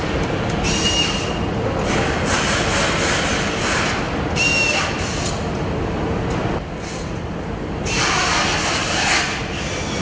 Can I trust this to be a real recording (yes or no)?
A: yes